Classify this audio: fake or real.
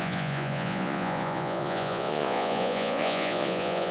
fake